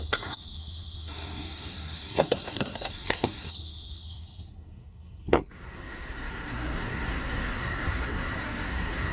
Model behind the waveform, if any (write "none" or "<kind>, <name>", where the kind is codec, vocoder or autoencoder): codec, SNAC